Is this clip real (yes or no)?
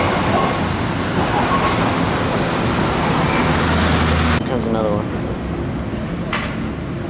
yes